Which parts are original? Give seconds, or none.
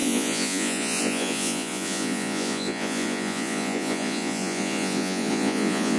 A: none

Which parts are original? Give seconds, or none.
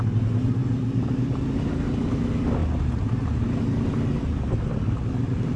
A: 0.0-5.6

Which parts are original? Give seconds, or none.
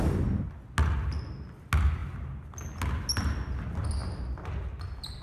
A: 0.0-5.2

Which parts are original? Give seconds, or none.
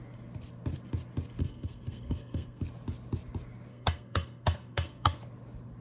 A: 0.0-1.4; 2.6-3.7; 5.2-5.8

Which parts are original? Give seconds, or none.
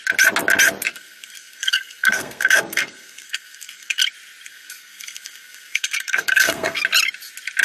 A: 0.0-0.9; 4.0-4.5; 6.8-7.6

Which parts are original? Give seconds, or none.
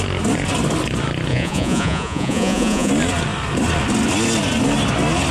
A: 0.0-1.3; 2.9-5.3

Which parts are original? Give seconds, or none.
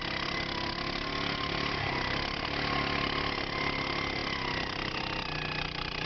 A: 0.0-6.1